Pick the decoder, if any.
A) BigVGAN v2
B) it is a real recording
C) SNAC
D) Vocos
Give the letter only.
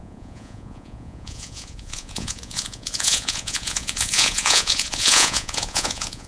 D